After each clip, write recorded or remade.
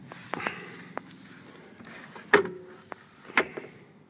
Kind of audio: recorded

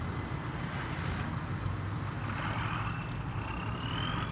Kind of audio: recorded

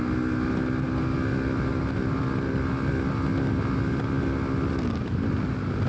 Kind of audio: recorded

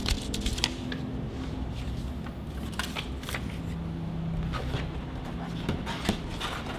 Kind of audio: recorded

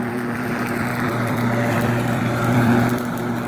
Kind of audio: remade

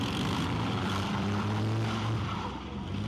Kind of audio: remade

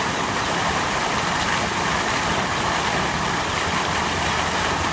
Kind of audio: remade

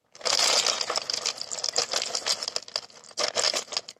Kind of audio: recorded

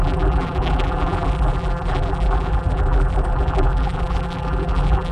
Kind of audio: remade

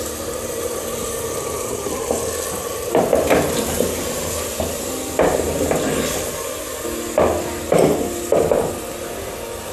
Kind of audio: recorded